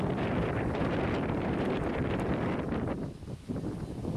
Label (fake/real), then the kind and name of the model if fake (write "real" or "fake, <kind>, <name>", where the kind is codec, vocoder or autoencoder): fake, vocoder, BigVGAN v2